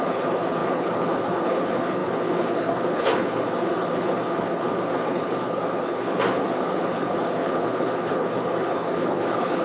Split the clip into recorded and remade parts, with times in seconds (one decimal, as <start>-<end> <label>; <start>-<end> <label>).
0.0-9.6 remade